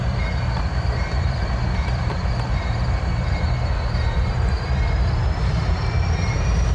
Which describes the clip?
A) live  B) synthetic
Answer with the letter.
B